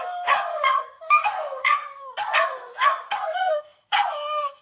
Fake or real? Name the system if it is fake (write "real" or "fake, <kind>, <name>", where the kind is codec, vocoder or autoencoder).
fake, codec, SNAC